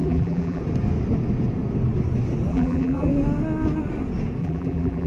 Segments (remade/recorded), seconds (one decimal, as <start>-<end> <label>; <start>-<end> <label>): 0.0-0.6 remade; 0.6-2.5 recorded; 2.5-3.1 remade; 3.1-4.4 recorded; 4.4-5.1 remade